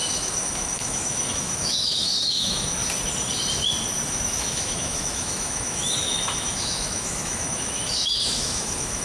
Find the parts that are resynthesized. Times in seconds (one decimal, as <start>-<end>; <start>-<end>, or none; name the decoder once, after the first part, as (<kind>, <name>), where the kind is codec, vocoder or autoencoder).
0.0-2.8 (autoencoder, DAC-VAE); 4.1-9.0